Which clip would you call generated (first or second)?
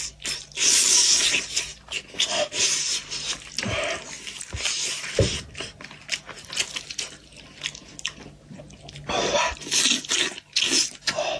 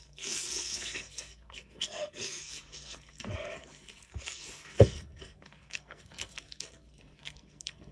second